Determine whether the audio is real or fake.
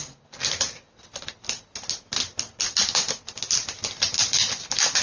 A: real